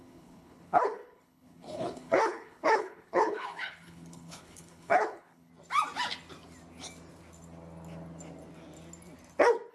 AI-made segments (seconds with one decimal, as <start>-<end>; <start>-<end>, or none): 0.0-5.5